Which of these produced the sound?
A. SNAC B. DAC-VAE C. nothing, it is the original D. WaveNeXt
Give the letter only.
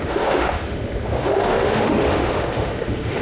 B